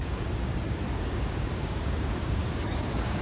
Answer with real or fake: fake